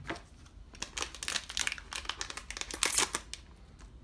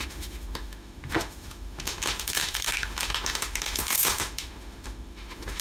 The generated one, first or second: second